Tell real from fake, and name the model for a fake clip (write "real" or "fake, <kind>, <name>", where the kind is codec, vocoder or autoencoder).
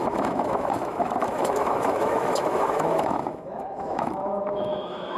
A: fake, autoencoder, DAC-VAE